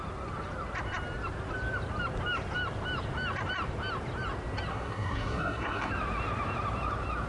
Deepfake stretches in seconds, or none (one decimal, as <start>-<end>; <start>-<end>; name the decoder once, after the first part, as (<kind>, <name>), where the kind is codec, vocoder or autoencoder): 4.7-5.9 (codec, SNAC)